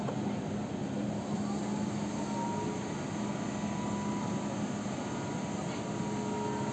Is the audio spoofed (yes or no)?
no